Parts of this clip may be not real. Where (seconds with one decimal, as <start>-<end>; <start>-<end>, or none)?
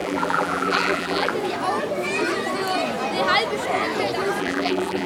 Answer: 0.0-1.3; 4.4-5.1